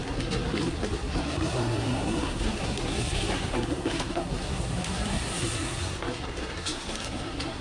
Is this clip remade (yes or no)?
yes